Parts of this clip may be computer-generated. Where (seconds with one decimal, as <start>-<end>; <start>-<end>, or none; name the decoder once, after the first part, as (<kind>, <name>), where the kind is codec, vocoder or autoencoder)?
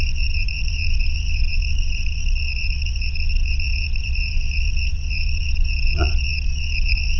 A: 0.0-7.2 (vocoder, Vocos)